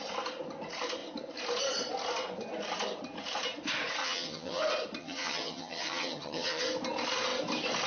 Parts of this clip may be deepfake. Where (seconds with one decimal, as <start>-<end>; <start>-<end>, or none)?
4.0-4.6; 5.0-6.6